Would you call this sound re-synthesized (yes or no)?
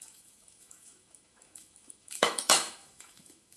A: yes